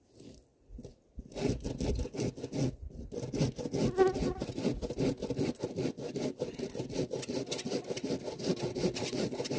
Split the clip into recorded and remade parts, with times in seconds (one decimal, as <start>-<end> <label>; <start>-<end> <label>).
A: 0.0-9.6 recorded